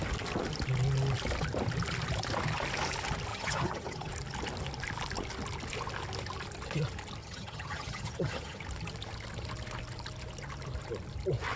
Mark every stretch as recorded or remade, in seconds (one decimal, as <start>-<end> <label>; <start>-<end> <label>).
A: 0.0-3.3 recorded; 3.3-4.1 remade; 4.1-7.2 recorded; 7.2-8.6 remade; 8.6-11.6 recorded